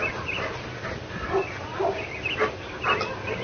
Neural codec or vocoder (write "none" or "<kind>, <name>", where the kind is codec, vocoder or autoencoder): none